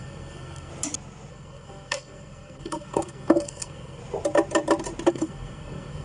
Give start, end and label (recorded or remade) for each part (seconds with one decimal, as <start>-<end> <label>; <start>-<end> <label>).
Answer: 0.0-0.7 remade; 0.7-1.3 recorded; 1.3-4.0 remade; 4.0-5.1 recorded; 5.1-6.0 remade